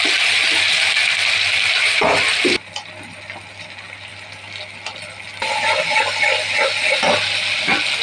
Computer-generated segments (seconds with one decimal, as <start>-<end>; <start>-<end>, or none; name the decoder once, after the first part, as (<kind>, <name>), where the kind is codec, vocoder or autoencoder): none